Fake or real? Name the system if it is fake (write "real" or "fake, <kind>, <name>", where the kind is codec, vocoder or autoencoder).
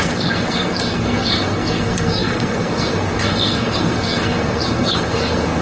fake, codec, SNAC